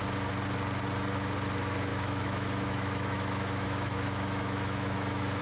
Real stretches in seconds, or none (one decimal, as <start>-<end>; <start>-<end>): 0.0-1.9